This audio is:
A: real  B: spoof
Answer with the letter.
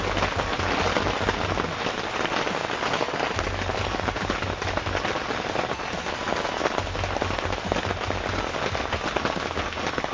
A